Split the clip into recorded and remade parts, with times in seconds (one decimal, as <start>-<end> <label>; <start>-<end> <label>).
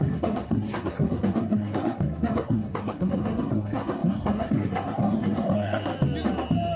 0.0-5.9 remade; 5.9-6.8 recorded